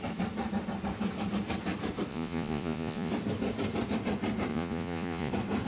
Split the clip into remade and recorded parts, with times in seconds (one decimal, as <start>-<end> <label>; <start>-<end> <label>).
0.0-2.1 recorded; 2.1-3.1 remade; 3.1-4.5 recorded; 4.5-5.3 remade; 5.3-5.7 recorded